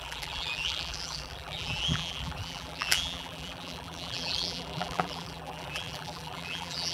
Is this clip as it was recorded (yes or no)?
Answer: no